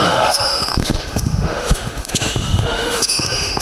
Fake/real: fake